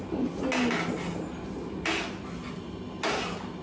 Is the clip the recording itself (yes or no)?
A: yes